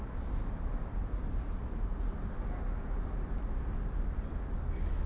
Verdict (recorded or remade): recorded